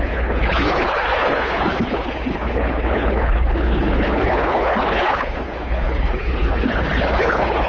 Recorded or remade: remade